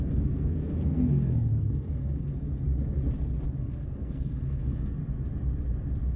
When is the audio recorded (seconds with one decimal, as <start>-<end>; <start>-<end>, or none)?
2.3-3.6; 5.0-6.2